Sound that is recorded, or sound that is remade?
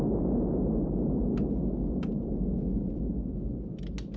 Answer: recorded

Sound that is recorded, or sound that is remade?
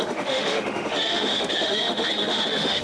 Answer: remade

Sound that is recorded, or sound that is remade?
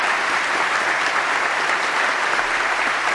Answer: recorded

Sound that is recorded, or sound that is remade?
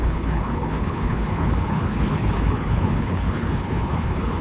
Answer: remade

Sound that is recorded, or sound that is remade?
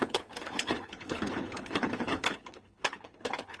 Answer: remade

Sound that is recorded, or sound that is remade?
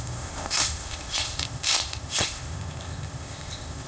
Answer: remade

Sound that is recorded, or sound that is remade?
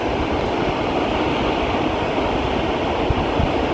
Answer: recorded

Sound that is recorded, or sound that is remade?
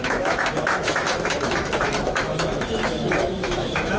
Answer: remade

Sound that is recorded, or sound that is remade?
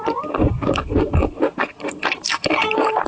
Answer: recorded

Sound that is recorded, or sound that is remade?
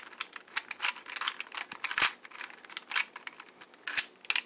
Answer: recorded